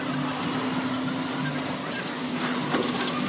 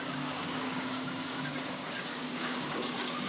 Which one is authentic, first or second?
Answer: first